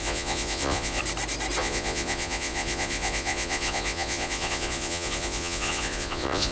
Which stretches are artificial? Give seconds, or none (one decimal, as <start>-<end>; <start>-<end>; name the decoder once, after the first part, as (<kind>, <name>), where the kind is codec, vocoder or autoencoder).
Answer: 0.0-1.0 (vocoder, Vocos); 1.6-6.5